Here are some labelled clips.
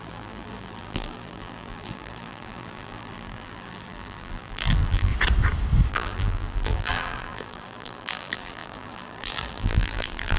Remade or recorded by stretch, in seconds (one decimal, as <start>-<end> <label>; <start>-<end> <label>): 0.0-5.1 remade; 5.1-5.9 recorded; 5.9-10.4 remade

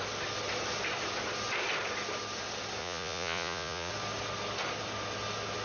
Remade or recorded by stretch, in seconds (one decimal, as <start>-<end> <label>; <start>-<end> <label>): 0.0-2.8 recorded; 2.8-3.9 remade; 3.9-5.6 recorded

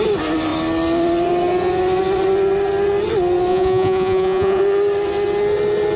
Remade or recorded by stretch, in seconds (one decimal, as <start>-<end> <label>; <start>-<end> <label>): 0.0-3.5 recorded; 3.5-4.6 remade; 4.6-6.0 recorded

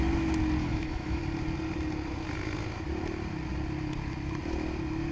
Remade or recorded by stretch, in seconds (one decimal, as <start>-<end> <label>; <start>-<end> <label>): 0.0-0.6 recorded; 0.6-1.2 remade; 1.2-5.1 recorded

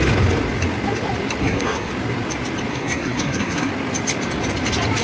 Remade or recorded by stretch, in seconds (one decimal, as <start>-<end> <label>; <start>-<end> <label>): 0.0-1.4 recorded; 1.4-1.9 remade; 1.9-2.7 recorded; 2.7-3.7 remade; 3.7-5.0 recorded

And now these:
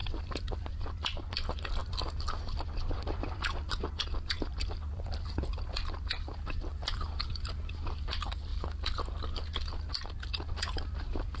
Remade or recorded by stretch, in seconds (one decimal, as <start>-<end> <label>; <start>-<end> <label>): 0.0-8.5 remade; 8.5-10.0 recorded; 10.0-11.4 remade

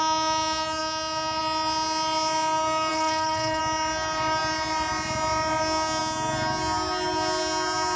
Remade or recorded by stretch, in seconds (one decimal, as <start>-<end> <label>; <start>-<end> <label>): 0.0-2.9 recorded; 2.9-3.6 remade; 3.6-8.0 recorded

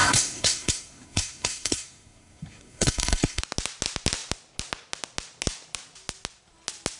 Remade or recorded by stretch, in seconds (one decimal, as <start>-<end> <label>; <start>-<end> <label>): 0.0-3.4 remade; 3.4-7.0 recorded